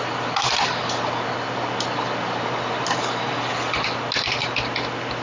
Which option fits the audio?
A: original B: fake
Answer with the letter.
A